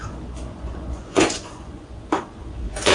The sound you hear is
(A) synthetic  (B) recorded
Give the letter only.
A